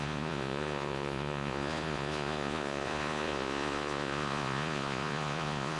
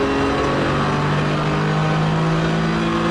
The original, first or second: second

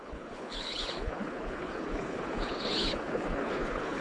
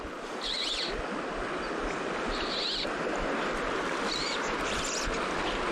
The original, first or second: second